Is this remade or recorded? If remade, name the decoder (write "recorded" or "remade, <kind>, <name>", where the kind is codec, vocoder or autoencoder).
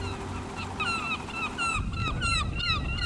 recorded